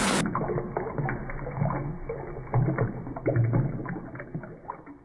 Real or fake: real